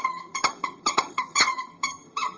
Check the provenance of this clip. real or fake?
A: fake